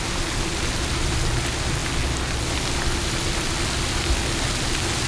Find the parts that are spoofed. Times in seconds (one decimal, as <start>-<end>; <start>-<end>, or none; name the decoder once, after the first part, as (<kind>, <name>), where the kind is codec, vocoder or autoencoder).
none